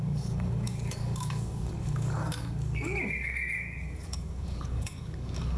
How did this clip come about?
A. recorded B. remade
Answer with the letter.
B